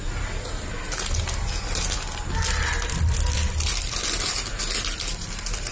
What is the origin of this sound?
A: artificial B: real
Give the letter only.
B